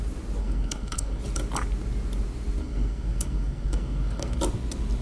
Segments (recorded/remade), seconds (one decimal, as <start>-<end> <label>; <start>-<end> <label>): 0.0-0.4 recorded; 0.4-1.2 remade; 1.2-2.6 recorded; 2.6-4.4 remade; 4.4-5.0 recorded